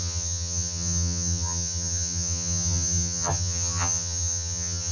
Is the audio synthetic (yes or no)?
yes